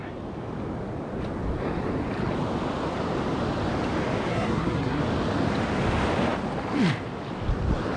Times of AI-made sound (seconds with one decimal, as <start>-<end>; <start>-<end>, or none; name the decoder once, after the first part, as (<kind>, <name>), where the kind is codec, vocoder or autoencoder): 4.3-5.0 (codec, SNAC)